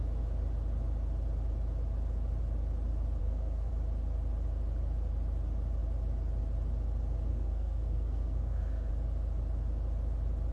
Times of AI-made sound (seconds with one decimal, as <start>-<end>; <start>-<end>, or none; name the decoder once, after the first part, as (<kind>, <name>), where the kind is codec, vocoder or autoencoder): 3.2-3.7 (codec, SNAC); 7.3-8.9